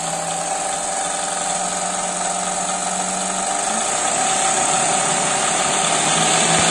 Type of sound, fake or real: real